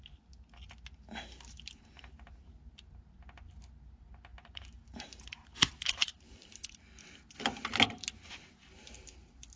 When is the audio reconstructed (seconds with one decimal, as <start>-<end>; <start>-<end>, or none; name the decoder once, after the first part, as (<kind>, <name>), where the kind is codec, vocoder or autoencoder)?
4.3-6.8 (vocoder, BigVGAN v2)